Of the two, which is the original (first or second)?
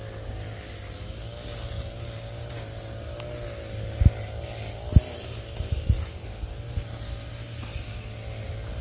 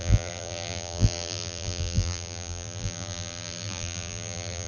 first